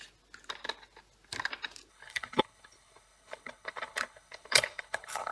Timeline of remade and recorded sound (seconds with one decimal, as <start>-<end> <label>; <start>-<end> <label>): 0.0-1.9 recorded; 1.9-5.3 remade